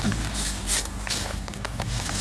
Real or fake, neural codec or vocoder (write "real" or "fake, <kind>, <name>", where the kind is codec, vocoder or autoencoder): fake, codec, DAC